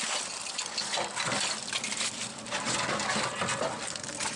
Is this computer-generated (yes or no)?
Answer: no